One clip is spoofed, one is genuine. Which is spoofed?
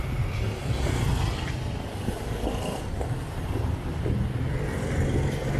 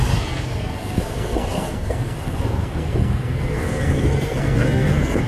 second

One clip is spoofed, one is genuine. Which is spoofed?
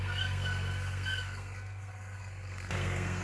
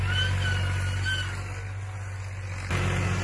first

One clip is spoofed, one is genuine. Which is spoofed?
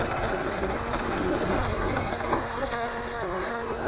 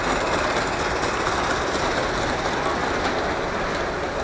first